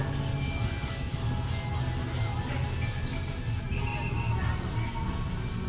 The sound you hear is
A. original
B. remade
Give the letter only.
A